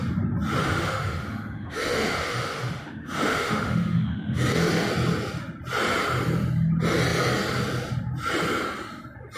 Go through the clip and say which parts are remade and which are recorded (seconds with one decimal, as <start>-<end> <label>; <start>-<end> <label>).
0.0-0.6 recorded; 0.6-4.9 remade; 4.9-9.4 recorded